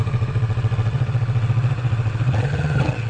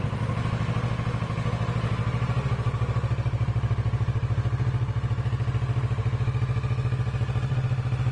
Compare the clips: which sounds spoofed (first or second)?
first